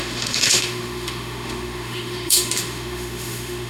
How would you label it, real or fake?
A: fake